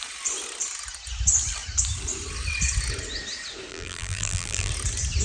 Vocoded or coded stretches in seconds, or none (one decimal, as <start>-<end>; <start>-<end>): 3.7-4.7